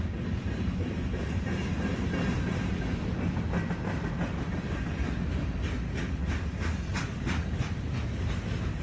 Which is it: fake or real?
real